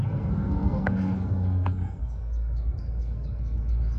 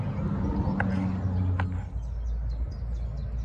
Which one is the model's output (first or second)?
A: first